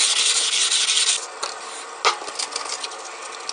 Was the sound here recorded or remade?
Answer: recorded